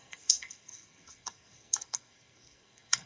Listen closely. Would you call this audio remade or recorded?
remade